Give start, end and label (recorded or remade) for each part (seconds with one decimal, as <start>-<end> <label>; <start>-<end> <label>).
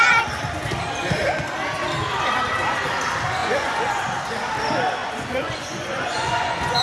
0.0-3.4 recorded; 3.4-4.0 remade; 4.0-5.0 recorded; 5.0-6.8 remade